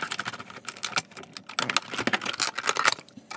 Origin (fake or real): real